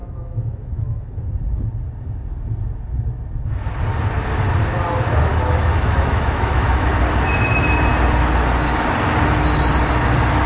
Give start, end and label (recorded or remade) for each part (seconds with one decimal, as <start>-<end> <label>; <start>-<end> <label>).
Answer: 0.0-1.2 remade; 1.2-5.3 recorded; 5.3-6.9 remade; 6.9-10.5 recorded